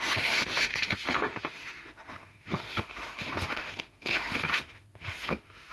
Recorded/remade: remade